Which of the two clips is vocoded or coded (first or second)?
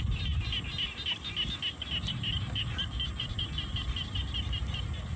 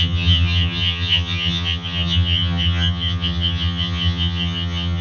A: second